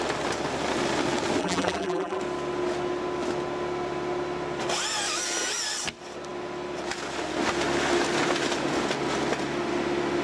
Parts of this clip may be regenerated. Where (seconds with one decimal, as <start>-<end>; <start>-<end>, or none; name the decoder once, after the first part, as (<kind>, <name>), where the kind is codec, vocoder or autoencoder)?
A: 1.4-2.2 (vocoder, BigVGAN v2)